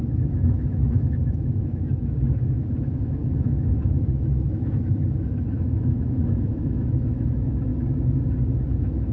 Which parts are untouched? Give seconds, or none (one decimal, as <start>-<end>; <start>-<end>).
7.7-9.1